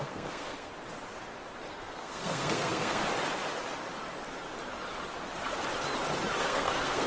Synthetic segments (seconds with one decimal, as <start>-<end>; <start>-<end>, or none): 0.0-0.7; 1.7-3.0; 6.4-7.1